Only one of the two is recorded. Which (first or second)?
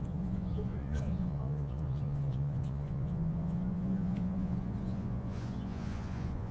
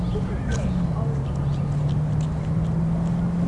second